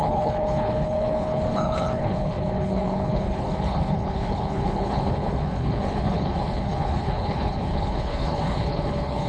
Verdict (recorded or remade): remade